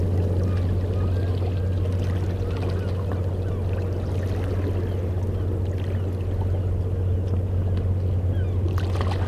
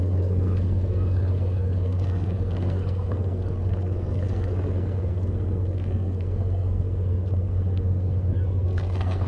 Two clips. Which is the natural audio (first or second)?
first